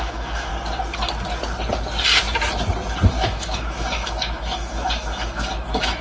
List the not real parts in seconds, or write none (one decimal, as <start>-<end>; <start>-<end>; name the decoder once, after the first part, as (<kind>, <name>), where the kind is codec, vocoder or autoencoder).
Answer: 0.0-0.5 (autoencoder, DAC-VAE); 3.1-6.0